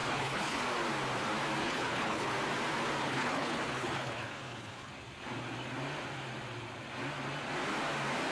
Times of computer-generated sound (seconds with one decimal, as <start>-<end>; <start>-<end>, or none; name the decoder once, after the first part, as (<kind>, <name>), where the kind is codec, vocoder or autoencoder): 0.0-0.6 (codec, HILCodec); 1.6-2.3; 3.0-4.9